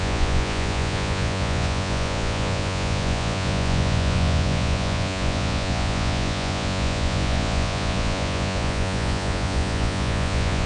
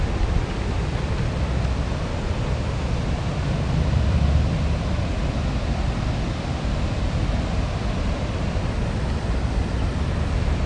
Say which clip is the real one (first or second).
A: second